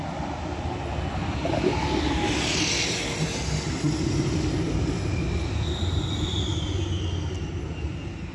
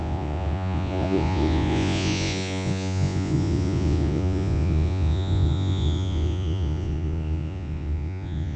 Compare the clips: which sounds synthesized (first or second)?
second